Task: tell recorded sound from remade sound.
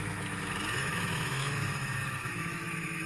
remade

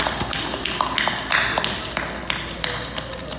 recorded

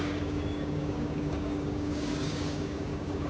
remade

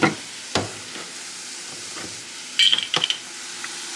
recorded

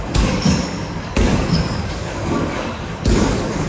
remade